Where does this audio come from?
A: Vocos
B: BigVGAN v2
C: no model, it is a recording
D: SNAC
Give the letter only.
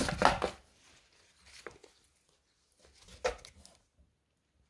C